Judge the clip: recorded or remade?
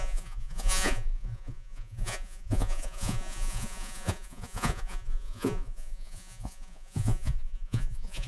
remade